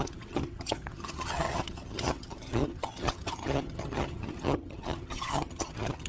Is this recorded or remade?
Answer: remade